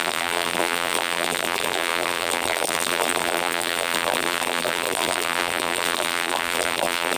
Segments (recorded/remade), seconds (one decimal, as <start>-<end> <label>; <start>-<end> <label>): 0.0-7.2 remade